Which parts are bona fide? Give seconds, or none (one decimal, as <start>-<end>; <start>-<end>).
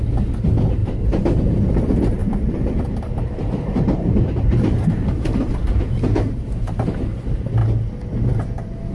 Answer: 0.0-2.2; 6.9-8.9